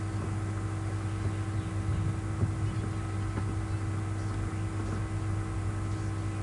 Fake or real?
real